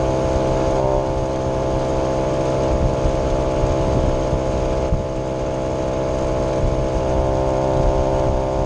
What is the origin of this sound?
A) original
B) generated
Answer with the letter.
A